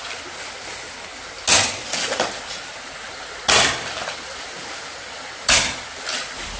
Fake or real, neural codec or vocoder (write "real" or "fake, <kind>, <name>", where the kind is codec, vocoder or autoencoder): real